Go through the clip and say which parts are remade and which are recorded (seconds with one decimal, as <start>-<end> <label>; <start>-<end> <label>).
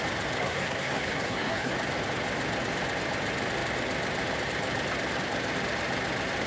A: 0.0-0.4 recorded; 0.4-1.7 remade; 1.7-6.5 recorded